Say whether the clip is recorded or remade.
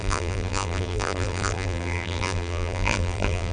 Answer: remade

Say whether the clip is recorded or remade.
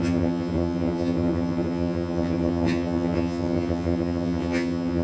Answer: remade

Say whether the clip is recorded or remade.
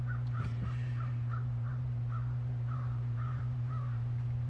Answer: remade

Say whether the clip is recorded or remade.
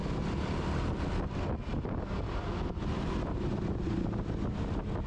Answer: recorded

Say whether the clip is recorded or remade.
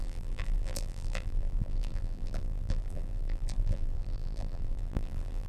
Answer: remade